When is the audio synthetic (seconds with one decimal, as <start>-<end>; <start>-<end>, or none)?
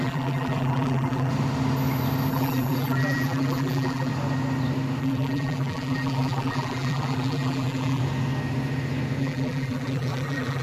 0.0-1.3; 2.3-4.1; 5.0-8.0; 9.2-10.6